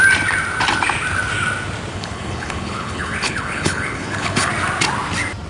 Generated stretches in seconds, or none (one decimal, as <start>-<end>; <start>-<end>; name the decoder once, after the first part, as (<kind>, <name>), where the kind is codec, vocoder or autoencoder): 1.9-4.5 (codec, HILCodec)